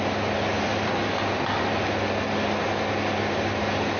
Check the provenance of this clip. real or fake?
real